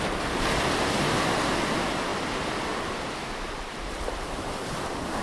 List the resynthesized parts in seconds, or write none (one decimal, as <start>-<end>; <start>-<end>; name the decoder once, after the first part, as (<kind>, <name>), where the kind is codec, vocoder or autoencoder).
2.1-5.2 (vocoder, BigVGAN v2)